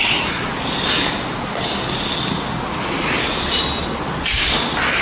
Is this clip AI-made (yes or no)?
no